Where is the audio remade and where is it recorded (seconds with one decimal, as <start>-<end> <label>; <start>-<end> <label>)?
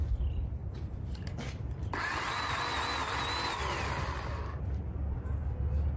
0.0-6.0 recorded